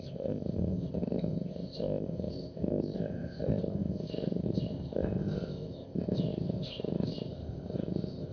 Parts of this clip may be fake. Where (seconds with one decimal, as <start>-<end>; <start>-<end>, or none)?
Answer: 0.0-8.3

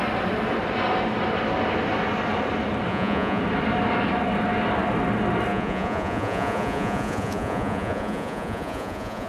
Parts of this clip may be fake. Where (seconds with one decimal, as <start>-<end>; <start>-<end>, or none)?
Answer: 2.9-3.4; 5.5-9.3

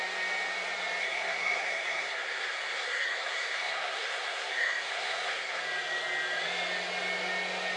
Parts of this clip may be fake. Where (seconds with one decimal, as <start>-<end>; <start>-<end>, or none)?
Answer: 1.0-5.6

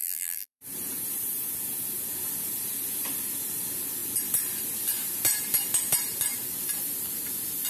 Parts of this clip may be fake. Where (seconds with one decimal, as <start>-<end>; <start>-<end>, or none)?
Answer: 0.0-0.6

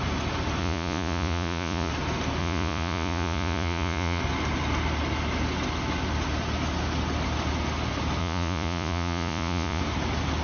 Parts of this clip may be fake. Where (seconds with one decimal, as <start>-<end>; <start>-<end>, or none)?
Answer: 0.6-1.9; 2.4-4.2; 8.2-9.8